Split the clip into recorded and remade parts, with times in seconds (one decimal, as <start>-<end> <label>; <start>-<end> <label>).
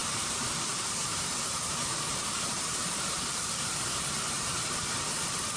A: 0.0-5.6 remade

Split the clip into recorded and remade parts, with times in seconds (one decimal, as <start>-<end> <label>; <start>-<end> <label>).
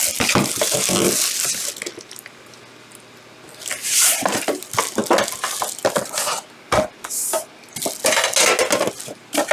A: 0.0-3.8 recorded; 3.8-4.4 remade; 4.4-9.5 recorded